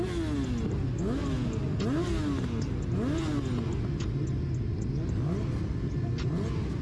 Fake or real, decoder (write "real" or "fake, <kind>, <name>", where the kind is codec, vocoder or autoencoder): real